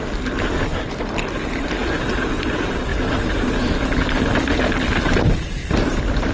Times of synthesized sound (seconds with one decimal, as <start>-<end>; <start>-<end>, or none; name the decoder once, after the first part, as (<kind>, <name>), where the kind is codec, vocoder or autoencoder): none